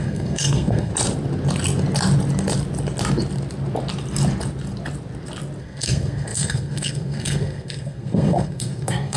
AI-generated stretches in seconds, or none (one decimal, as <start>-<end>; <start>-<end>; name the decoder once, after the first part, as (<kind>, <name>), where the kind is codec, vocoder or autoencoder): 0.0-0.9 (codec, SNAC); 5.6-9.2